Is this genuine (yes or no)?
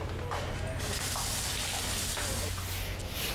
yes